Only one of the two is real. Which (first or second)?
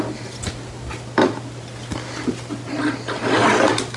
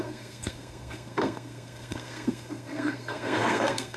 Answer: first